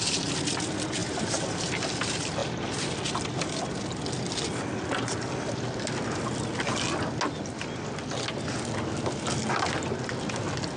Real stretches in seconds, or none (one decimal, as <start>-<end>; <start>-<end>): 0.0-1.0; 1.8-10.8

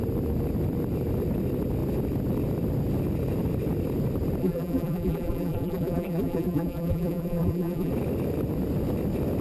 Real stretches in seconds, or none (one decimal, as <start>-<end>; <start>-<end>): 0.0-4.4; 7.9-9.4

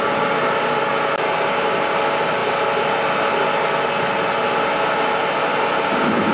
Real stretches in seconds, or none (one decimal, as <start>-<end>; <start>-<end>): 0.0-6.3

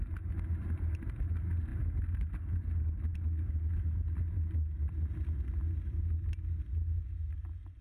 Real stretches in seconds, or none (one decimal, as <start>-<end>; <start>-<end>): 0.0-7.8